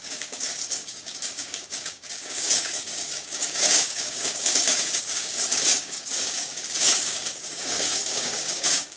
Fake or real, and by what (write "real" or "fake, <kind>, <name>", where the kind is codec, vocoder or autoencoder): fake, codec, DAC